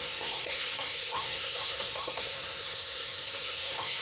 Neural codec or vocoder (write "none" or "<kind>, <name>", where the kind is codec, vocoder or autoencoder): codec, SNAC